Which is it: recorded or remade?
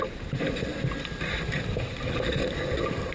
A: recorded